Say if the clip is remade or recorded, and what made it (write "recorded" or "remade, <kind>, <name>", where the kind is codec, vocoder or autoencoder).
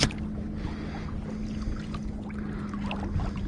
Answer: recorded